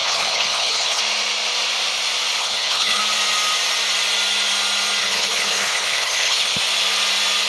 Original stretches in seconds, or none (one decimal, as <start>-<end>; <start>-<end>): 1.0-2.4; 3.0-5.0; 6.6-7.5